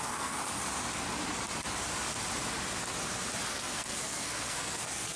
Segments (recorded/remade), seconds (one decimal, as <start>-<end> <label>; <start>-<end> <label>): 0.0-0.4 remade; 0.4-3.5 recorded; 3.5-5.2 remade